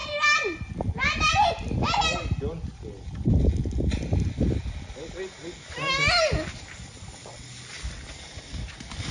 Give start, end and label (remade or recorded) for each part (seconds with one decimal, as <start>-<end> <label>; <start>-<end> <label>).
0.0-9.1 recorded